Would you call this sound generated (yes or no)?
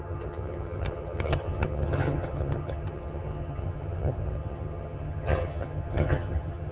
yes